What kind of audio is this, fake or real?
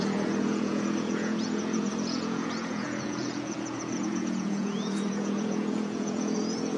fake